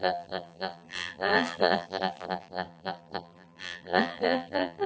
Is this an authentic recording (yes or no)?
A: no